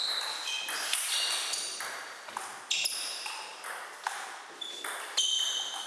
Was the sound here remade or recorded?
recorded